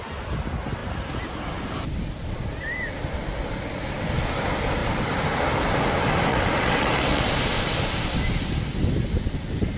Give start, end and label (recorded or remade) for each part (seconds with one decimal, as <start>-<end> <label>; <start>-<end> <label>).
0.0-6.3 recorded; 6.3-7.3 remade; 7.3-9.8 recorded